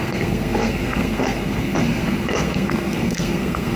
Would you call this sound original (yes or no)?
no